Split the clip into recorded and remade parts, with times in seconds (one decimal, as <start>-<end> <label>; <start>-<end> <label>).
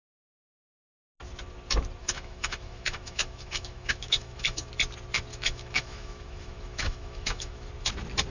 0.0-2.0 recorded; 2.0-4.7 remade; 4.7-5.3 recorded; 5.3-7.7 remade; 7.7-8.3 recorded